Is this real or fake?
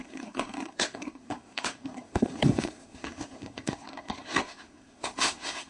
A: fake